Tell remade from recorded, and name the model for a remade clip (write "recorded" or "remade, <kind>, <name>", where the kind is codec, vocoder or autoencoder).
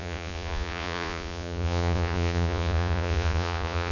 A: remade, vocoder, Vocos